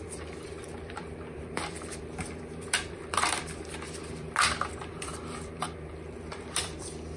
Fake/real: fake